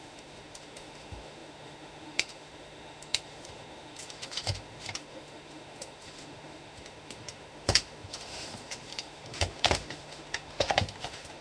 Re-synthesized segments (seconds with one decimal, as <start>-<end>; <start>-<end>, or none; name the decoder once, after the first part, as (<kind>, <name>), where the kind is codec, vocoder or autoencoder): 0.0-11.4 (autoencoder, DAC-VAE)